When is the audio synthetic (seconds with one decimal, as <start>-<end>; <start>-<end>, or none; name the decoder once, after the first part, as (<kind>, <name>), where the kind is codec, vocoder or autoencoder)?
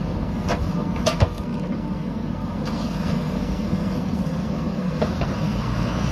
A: 0.0-6.1 (codec, SNAC)